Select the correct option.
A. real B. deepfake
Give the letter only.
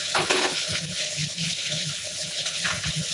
B